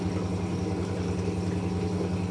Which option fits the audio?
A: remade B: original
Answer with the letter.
B